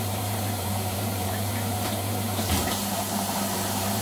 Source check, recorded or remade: remade